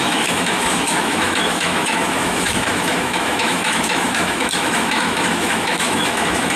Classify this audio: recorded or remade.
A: remade